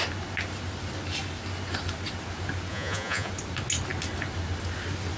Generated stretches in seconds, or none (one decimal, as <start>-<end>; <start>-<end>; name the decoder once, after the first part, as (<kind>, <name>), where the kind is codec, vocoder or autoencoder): 2.7-3.3 (vocoder, Vocos)